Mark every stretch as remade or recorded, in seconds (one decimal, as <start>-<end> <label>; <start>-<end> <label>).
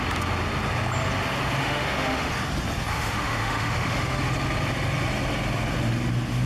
0.0-1.6 recorded; 1.6-2.3 remade; 2.3-2.9 recorded; 2.9-4.2 remade; 4.2-6.5 recorded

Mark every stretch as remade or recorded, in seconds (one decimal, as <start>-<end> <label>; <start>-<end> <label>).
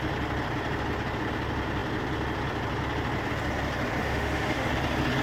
0.0-4.0 recorded; 4.0-4.7 remade; 4.7-5.2 recorded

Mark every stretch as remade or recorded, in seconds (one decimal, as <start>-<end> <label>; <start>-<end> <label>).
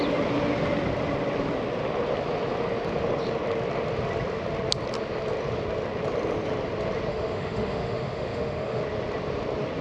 0.0-7.1 recorded; 7.1-8.8 remade; 8.8-9.8 recorded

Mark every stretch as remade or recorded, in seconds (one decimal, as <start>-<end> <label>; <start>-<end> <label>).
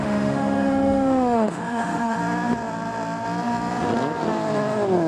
0.0-2.2 remade; 2.2-5.1 recorded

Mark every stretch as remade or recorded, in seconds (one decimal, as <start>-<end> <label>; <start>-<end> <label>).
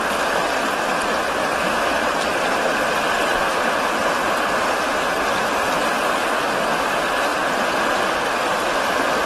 0.0-9.3 recorded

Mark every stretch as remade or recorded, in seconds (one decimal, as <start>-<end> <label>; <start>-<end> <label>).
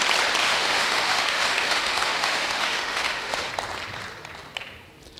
0.0-0.4 recorded; 0.4-3.5 remade; 3.5-5.2 recorded